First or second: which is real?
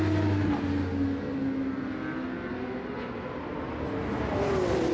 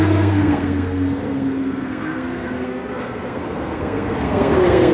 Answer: first